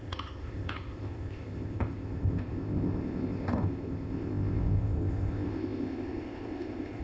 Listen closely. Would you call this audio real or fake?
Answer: fake